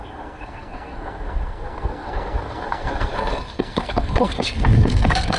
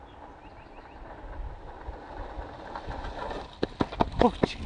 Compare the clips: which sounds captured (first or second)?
second